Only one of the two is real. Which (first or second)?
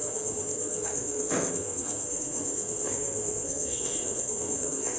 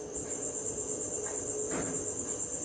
second